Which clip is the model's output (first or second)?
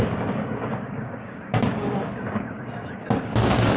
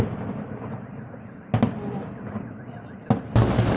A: first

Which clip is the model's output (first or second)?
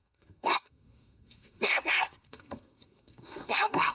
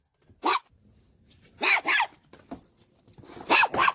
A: first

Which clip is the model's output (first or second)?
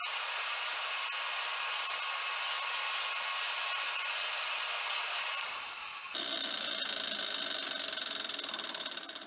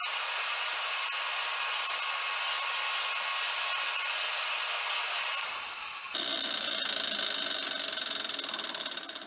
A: first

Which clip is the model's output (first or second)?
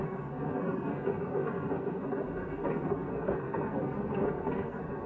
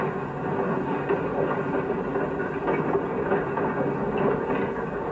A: first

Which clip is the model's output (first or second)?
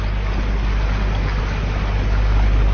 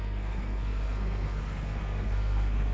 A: second